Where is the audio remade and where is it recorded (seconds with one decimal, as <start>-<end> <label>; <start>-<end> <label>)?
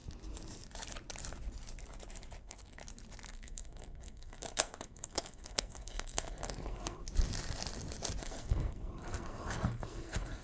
0.0-2.4 recorded; 2.4-2.8 remade; 2.8-3.3 recorded; 3.3-7.0 remade; 7.0-8.2 recorded; 8.2-10.4 remade